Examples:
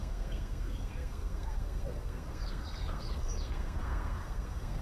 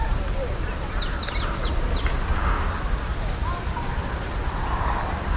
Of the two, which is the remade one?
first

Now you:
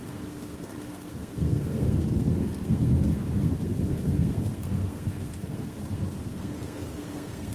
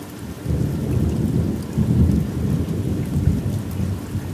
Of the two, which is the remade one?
first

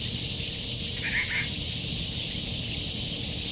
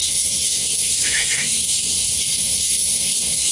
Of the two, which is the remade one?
second